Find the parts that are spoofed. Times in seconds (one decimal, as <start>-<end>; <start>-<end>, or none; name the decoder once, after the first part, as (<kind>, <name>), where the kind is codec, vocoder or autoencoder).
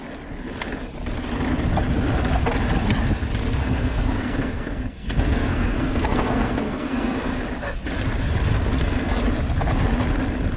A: 3.6-7.4 (codec, SNAC); 8.7-9.2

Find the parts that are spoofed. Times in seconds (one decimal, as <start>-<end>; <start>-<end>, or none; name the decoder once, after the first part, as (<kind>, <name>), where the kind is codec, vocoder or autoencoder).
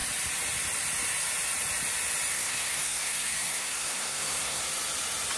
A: 2.3-4.6 (codec, SNAC)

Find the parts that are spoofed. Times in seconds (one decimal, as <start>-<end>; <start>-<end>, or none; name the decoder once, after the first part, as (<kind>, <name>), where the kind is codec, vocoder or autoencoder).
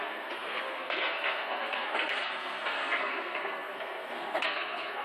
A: 0.0-5.0 (codec, SNAC)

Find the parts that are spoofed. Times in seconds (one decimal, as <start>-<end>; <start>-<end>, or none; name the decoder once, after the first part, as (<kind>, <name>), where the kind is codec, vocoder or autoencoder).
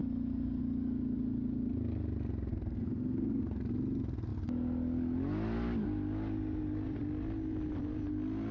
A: 2.5-3.6 (codec, SNAC)